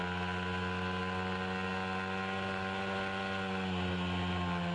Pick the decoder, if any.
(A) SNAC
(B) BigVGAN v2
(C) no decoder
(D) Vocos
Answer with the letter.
C